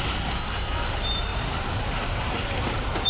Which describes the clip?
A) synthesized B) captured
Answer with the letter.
B